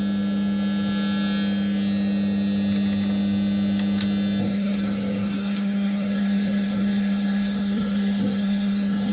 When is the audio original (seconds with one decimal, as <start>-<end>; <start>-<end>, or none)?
0.0-4.4